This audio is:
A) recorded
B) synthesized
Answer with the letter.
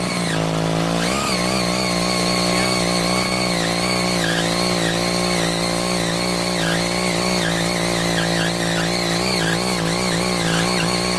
A